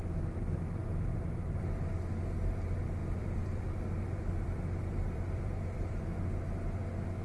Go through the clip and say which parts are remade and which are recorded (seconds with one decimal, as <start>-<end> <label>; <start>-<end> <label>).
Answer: 0.0-1.1 recorded; 1.1-2.0 remade; 2.0-3.0 recorded; 3.0-6.0 remade; 6.0-7.2 recorded

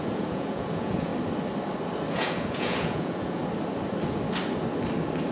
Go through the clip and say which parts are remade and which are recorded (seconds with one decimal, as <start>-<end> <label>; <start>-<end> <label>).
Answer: 0.0-1.1 remade; 1.1-2.1 recorded; 2.1-3.4 remade; 3.4-5.3 recorded

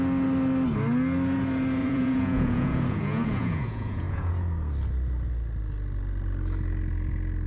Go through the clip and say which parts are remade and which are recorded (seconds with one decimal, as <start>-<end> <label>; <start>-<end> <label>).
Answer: 0.0-1.8 recorded; 1.8-4.3 remade; 4.3-7.5 recorded

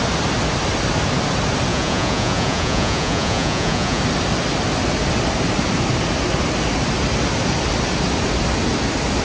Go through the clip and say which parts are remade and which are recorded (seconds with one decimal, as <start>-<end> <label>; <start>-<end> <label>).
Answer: 0.0-1.7 recorded; 1.7-4.0 remade; 4.0-9.2 recorded

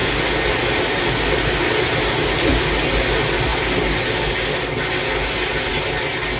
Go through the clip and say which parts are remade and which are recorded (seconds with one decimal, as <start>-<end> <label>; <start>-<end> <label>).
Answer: 0.0-6.4 recorded

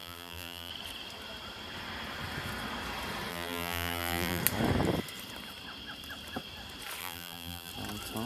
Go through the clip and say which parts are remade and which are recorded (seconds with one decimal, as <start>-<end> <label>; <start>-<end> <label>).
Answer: 0.0-0.7 remade; 0.7-3.3 recorded; 3.3-4.4 remade; 4.4-7.0 recorded; 7.0-7.7 remade; 7.7-8.3 recorded